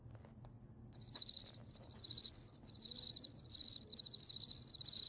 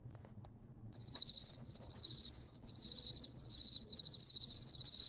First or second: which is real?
first